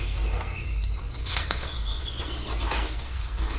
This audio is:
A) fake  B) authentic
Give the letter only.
A